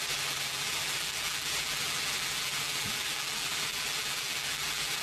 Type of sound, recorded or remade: remade